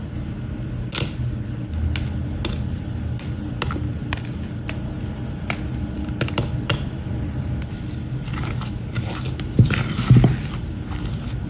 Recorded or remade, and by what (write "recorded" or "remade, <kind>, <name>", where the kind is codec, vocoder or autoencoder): recorded